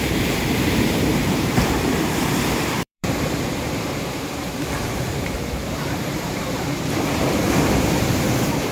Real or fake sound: fake